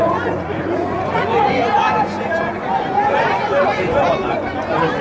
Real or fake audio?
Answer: fake